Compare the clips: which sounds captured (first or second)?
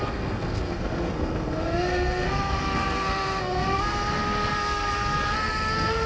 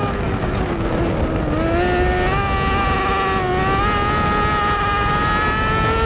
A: second